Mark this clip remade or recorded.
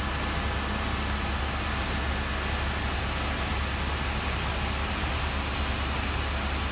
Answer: recorded